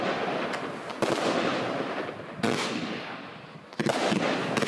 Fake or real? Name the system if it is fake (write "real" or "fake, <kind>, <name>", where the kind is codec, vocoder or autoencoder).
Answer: real